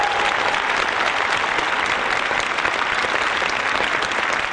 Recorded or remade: recorded